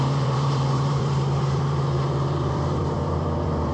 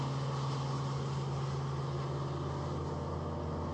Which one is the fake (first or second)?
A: first